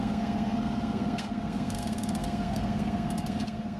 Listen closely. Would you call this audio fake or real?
fake